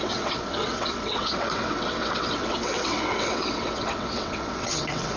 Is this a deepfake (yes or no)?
yes